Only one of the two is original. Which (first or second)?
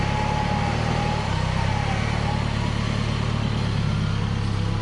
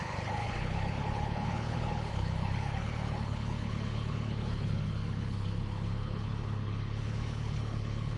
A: first